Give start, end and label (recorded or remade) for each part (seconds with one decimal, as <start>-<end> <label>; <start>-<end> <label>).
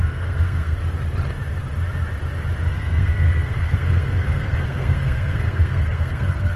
0.0-0.8 remade; 0.8-2.7 recorded; 2.7-6.6 remade